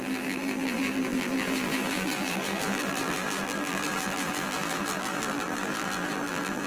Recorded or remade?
remade